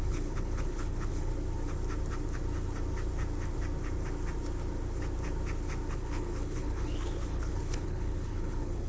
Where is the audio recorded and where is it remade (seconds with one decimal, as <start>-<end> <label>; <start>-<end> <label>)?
0.0-1.3 remade; 1.3-5.9 recorded; 5.9-8.9 remade